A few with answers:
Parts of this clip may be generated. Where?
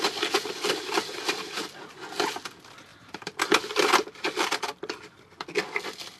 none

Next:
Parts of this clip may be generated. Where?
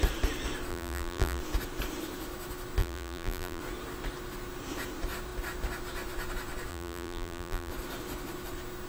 0.7-1.4 (vocoder, BigVGAN v2); 2.8-3.6; 6.7-7.7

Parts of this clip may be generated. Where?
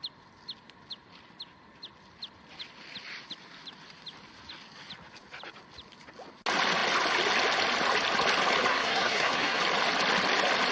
8.7-9.6 (codec, SNAC)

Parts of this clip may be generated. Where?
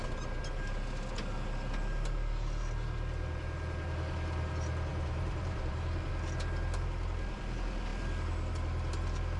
4.9-6.1 (vocoder, BigVGAN v2)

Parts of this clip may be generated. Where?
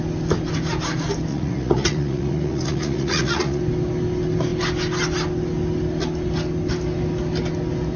1.3-3.6 (vocoder, Vocos)